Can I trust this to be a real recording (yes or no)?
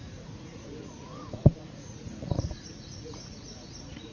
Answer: no